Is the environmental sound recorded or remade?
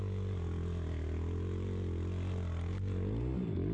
recorded